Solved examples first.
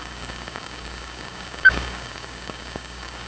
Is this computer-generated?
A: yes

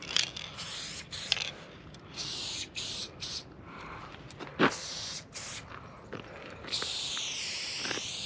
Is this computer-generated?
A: no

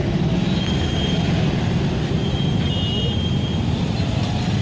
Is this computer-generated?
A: no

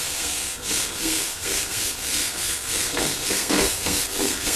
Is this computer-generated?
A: yes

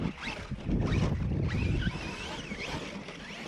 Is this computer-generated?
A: no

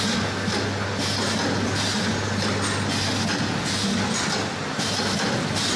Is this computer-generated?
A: no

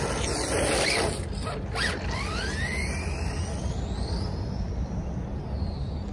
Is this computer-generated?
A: no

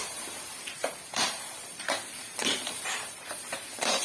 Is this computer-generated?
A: yes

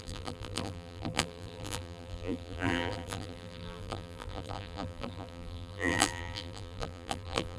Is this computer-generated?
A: yes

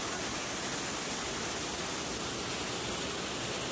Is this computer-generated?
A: no